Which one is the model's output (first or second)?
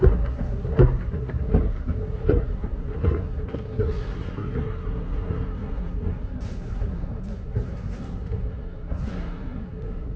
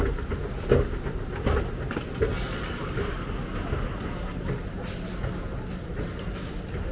first